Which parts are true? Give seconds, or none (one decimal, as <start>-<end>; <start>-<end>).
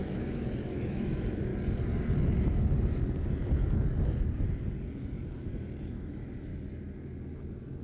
1.5-5.8; 6.5-7.8